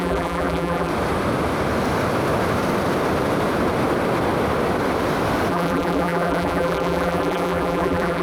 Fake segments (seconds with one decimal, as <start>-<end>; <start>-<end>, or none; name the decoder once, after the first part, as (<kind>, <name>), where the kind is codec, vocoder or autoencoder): 0.0-0.9 (vocoder, BigVGAN v2); 5.5-8.2